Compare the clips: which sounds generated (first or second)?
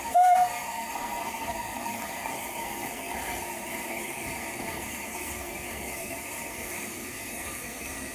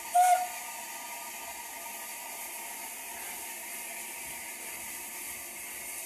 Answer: first